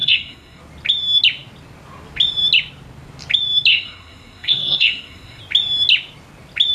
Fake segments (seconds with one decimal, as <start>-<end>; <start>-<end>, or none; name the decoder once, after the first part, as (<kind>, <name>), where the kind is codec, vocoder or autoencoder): 0.0-0.6 (codec, SNAC); 3.7-5.4